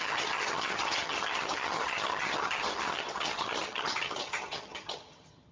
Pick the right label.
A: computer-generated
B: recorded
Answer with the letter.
A